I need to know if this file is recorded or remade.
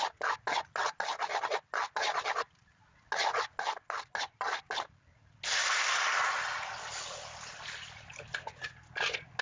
recorded